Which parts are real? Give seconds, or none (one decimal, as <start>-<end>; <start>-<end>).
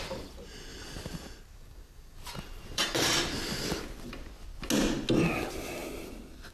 0.0-0.7; 4.1-5.8